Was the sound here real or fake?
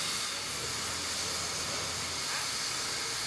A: real